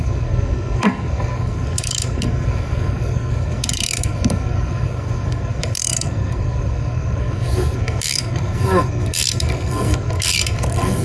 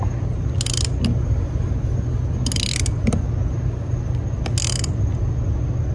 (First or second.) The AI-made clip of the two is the first